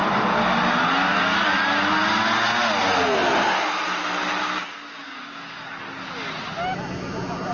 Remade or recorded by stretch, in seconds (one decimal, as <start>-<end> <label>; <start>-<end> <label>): 0.0-4.6 recorded; 4.6-5.7 remade; 5.7-7.5 recorded